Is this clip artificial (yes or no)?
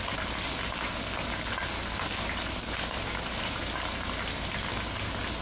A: no